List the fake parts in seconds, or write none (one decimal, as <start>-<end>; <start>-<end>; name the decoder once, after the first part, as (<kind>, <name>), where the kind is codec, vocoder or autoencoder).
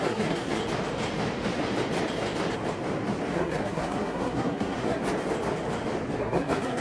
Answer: 0.0-0.6 (codec, SNAC); 3.3-5.0; 6.2-6.8